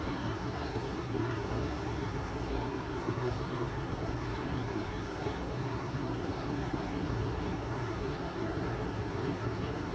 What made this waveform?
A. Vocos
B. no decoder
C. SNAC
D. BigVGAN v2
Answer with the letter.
C